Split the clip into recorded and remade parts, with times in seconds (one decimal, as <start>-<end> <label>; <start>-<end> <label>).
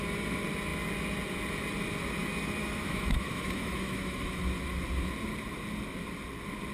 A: 0.0-2.6 recorded; 2.6-4.4 remade; 4.4-6.7 recorded